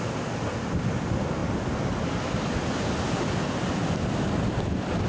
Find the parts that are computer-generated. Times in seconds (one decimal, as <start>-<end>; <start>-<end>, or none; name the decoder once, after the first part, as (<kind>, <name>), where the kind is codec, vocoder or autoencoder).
none

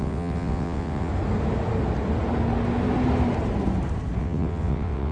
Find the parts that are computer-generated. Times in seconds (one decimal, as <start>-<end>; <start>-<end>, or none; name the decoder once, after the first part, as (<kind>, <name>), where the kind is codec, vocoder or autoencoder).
0.0-1.1 (vocoder, WaveNeXt); 4.2-5.1

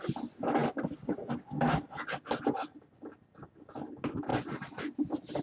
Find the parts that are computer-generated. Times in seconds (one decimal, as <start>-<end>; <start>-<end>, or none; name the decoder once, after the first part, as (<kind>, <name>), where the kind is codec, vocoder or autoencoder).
none

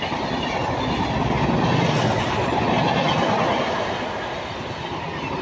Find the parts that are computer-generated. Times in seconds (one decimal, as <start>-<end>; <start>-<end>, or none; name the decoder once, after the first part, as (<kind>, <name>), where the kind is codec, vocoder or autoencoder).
none

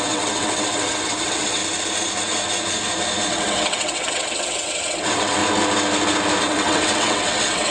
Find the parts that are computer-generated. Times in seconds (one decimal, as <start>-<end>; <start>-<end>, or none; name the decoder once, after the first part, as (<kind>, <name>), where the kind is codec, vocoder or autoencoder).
0.0-1.6 (vocoder, WaveNeXt); 3.3-5.4; 6.4-7.7